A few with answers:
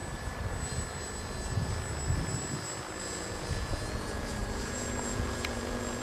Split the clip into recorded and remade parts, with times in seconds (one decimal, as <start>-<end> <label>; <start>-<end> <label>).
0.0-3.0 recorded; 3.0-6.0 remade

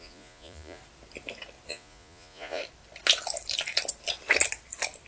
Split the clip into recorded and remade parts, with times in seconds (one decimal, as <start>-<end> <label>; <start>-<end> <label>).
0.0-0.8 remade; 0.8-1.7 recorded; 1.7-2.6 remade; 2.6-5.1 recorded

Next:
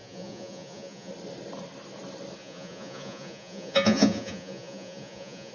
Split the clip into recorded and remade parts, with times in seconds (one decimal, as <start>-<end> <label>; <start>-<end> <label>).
0.0-1.1 remade; 1.1-2.4 recorded; 2.4-5.5 remade

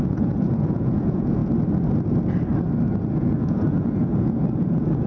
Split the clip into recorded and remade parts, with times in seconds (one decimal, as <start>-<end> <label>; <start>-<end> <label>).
0.0-1.4 remade; 1.4-3.1 recorded; 3.1-5.1 remade

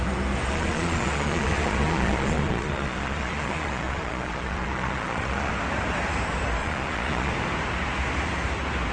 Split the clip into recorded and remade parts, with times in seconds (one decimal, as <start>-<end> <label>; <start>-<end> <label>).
0.0-0.5 recorded; 0.5-5.5 remade; 5.5-6.6 recorded; 6.6-7.3 remade; 7.3-8.9 recorded